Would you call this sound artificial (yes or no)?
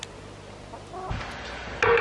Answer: no